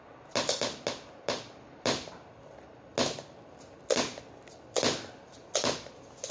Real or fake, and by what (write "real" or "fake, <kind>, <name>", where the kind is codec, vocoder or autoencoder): real